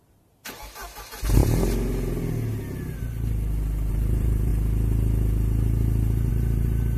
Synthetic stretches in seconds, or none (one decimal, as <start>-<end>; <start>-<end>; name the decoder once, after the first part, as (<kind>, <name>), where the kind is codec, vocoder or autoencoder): 0.0-1.4 (vocoder, BigVGAN v2); 3.9-4.5; 6.3-7.0

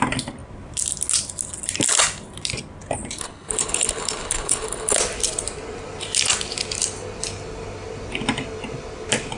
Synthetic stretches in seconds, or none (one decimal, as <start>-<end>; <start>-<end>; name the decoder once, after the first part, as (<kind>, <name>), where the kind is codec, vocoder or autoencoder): 3.2-5.0 (codec, HILCodec)

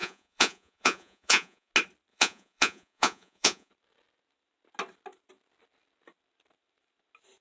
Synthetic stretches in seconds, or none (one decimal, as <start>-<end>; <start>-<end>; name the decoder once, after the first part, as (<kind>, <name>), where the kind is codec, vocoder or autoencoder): 0.0-1.7 (vocoder, Vocos); 2.1-3.7